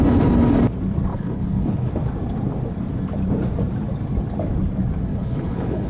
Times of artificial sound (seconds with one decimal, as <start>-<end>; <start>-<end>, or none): 1.1-1.9; 5.1-5.9